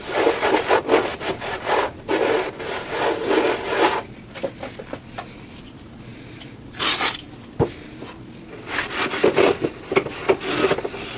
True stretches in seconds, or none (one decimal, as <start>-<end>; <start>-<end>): 0.0-11.2